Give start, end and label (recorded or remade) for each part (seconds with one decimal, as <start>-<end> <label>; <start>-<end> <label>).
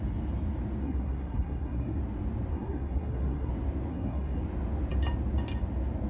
0.0-0.8 recorded; 0.8-2.0 remade; 2.0-2.5 recorded; 2.5-3.5 remade; 3.5-3.9 recorded; 3.9-4.4 remade; 4.4-6.1 recorded